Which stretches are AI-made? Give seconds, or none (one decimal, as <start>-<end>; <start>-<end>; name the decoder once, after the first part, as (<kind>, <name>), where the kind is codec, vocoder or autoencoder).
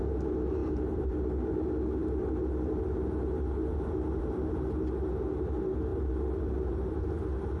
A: 0.6-1.2 (vocoder, BigVGAN v2); 5.9-7.1